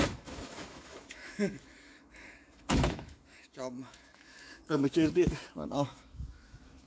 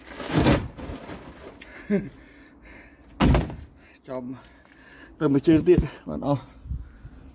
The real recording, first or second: second